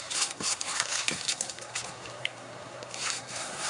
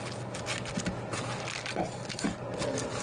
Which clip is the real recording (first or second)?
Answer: second